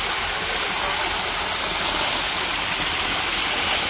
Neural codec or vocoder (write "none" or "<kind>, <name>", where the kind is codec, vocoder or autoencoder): none